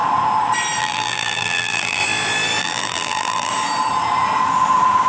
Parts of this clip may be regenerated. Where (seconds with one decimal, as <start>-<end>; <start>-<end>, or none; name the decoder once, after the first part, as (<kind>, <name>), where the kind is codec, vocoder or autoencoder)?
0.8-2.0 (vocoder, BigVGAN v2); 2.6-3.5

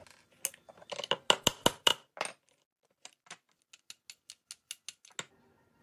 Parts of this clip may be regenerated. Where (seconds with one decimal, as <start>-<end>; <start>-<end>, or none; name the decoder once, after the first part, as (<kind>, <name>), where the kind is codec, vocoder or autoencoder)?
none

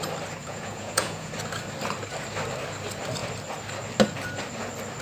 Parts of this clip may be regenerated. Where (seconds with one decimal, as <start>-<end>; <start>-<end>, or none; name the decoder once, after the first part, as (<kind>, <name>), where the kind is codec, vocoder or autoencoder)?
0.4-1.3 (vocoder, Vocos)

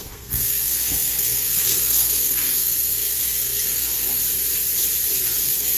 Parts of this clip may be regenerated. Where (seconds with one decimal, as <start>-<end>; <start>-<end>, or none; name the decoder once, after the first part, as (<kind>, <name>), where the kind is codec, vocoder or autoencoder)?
0.0-4.2 (codec, SNAC); 5.2-5.8

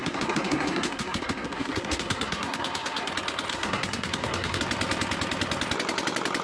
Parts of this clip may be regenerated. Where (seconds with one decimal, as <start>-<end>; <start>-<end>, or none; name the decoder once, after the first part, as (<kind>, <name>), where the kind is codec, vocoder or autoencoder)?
0.0-3.1 (codec, SNAC); 3.5-4.6

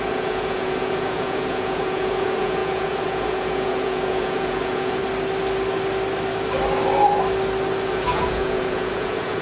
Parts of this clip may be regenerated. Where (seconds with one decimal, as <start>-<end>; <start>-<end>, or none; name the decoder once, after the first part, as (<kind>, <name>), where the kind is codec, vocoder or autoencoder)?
0.0-5.0 (vocoder, Vocos); 7.9-9.4

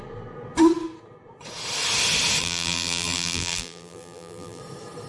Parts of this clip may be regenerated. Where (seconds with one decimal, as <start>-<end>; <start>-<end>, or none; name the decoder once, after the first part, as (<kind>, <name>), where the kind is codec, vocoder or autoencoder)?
2.4-4.6 (vocoder, BigVGAN v2)